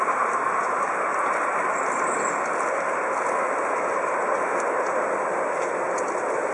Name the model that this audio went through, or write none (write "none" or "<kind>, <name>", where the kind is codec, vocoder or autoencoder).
none